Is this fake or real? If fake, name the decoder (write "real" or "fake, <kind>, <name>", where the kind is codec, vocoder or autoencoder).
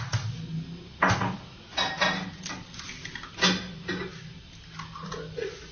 real